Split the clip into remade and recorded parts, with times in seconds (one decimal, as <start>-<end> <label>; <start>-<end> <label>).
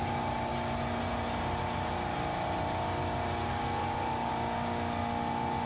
0.0-3.8 recorded; 3.8-4.3 remade; 4.3-5.7 recorded